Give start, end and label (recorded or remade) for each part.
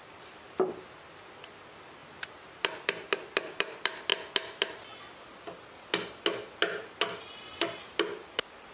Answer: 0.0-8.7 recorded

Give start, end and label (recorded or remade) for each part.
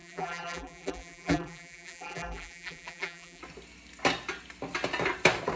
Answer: 0.0-3.4 remade; 3.4-5.6 recorded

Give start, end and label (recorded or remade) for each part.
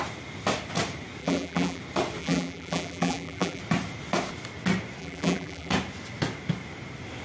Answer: 0.0-1.2 recorded; 1.2-1.8 remade; 1.8-2.2 recorded; 2.2-3.6 remade; 3.6-5.0 recorded; 5.0-5.7 remade; 5.7-7.2 recorded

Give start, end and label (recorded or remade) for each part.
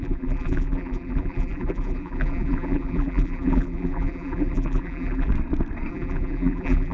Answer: 0.0-5.3 remade; 5.3-5.9 recorded; 5.9-6.9 remade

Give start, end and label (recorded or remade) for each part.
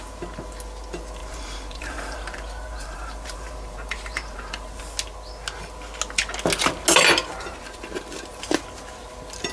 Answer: 0.0-1.2 recorded; 1.2-4.8 remade; 4.8-7.3 recorded; 7.3-7.8 remade; 7.8-9.5 recorded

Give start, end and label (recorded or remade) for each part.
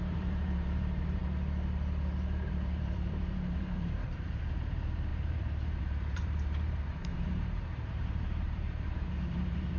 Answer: 0.0-1.2 remade; 1.2-2.5 recorded; 2.5-9.8 remade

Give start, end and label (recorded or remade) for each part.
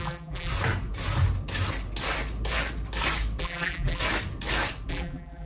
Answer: 0.0-0.5 remade; 0.5-3.4 recorded; 3.4-4.0 remade; 4.0-4.9 recorded; 4.9-5.5 remade